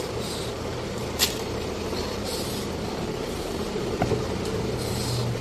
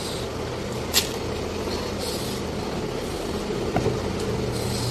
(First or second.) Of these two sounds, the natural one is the second